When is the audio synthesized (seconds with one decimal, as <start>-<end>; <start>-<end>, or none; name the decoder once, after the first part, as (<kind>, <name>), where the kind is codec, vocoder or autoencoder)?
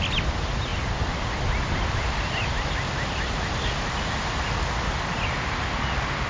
none